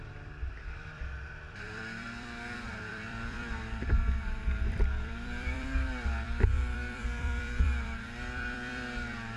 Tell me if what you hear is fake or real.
fake